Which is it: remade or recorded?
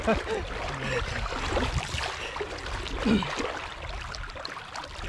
recorded